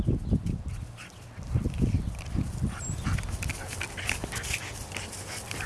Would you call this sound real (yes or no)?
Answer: yes